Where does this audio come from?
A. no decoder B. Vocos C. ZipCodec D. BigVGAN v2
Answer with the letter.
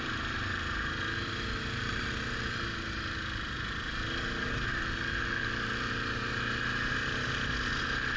A